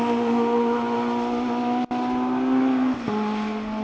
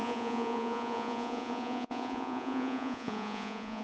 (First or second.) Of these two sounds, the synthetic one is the second